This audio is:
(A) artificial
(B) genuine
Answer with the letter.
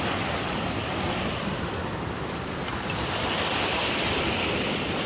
B